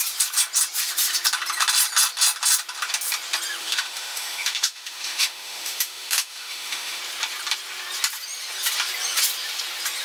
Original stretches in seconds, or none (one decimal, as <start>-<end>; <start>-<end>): 0.0-3.6; 7.0-10.0